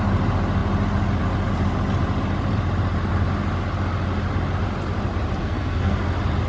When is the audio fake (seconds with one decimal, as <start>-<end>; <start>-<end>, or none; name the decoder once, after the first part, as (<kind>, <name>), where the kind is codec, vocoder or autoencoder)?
5.4-6.0 (codec, SNAC)